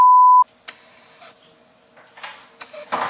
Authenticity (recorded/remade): recorded